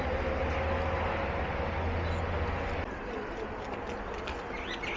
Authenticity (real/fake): real